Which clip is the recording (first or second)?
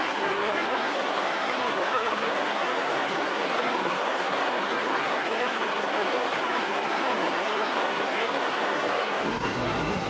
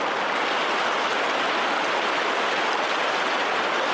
second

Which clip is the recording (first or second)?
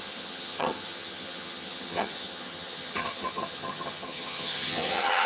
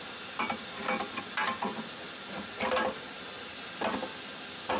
second